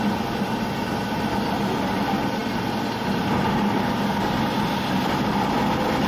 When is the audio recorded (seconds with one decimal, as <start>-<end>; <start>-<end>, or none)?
0.0-6.1